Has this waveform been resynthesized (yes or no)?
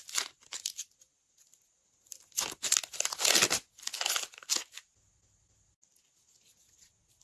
no